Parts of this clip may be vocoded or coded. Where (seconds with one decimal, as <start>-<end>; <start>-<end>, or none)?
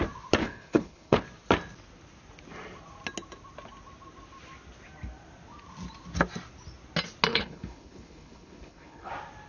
0.4-1.2; 7.3-9.1